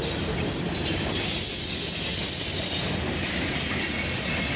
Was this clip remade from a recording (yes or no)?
no